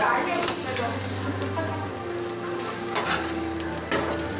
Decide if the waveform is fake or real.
real